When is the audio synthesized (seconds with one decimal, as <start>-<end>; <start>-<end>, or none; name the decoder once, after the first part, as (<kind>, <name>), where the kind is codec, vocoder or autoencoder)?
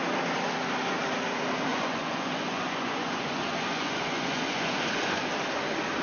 1.7-5.3 (vocoder, Vocos)